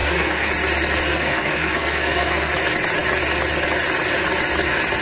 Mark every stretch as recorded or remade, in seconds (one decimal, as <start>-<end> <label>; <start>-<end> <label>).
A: 0.0-0.5 remade; 0.5-1.1 recorded; 1.1-2.5 remade; 2.5-5.0 recorded